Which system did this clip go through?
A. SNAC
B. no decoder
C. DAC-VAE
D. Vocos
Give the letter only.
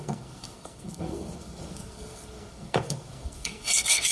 A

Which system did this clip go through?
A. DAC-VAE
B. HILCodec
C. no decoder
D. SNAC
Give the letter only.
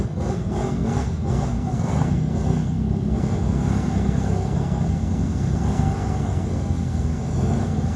D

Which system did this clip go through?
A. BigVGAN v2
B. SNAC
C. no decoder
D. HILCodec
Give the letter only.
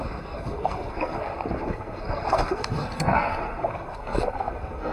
B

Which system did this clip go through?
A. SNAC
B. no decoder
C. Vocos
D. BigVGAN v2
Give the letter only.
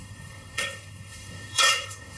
A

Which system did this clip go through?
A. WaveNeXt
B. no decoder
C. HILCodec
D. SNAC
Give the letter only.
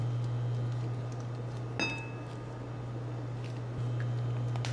B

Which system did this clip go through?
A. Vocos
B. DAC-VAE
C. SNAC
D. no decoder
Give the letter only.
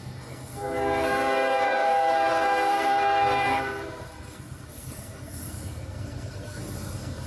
C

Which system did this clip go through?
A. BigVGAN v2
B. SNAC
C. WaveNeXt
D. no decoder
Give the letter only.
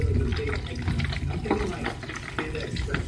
D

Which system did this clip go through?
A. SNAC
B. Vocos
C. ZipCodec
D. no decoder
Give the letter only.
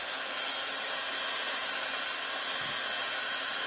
D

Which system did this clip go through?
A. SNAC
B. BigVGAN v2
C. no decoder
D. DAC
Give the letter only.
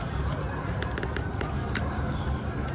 C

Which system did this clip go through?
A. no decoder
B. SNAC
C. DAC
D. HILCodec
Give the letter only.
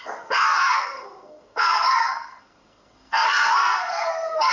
B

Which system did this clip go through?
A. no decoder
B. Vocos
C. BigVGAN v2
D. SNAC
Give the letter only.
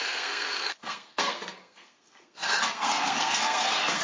D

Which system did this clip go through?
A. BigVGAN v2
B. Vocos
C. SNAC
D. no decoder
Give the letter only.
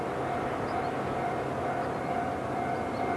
D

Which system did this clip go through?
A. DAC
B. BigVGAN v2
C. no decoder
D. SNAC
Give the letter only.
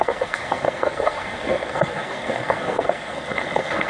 D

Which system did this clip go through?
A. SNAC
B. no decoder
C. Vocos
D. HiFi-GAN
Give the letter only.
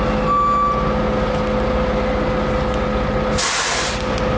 B